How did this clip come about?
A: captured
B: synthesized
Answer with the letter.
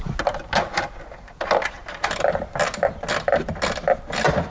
A